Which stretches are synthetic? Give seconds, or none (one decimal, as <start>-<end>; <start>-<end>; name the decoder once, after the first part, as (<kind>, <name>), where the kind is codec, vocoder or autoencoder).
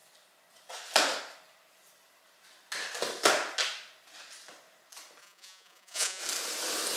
5.2-6.2 (vocoder, Vocos)